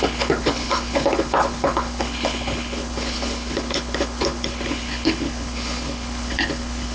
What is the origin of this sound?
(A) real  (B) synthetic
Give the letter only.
B